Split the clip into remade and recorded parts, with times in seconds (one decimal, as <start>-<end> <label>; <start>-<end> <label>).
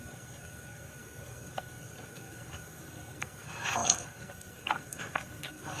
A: 0.0-5.8 remade